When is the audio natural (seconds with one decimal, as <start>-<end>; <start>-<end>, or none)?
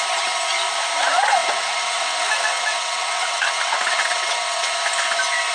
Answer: 0.0-1.4; 4.7-5.5